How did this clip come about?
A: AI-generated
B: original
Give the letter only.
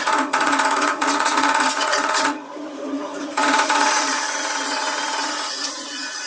A